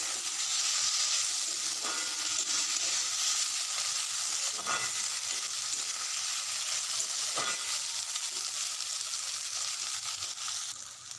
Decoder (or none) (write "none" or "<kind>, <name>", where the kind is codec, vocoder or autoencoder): none